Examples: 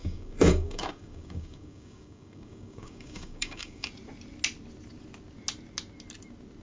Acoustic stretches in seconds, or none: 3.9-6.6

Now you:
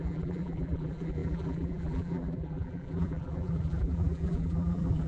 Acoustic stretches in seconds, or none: none

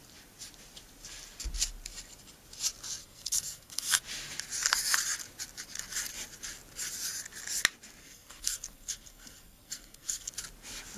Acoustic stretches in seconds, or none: 0.0-3.0; 4.0-8.0; 10.3-11.0

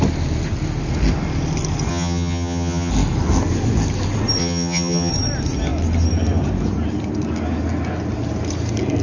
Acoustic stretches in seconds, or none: 0.0-1.9; 2.9-4.4; 5.1-9.0

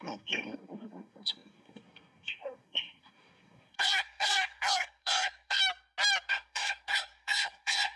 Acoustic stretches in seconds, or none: 5.6-6.3

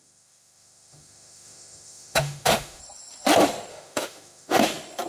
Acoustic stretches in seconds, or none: 2.8-3.7; 4.6-5.1

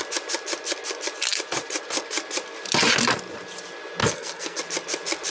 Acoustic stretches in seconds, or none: 0.0-4.0; 4.6-5.3